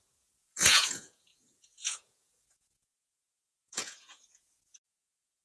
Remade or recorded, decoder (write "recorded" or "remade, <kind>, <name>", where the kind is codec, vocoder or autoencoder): remade, vocoder, Vocos